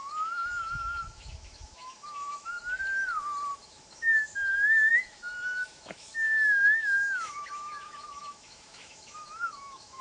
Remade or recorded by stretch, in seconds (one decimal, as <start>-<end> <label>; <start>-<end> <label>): 0.0-2.6 remade; 2.6-3.6 recorded; 3.6-10.0 remade